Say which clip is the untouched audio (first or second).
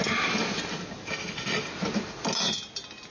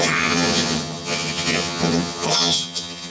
first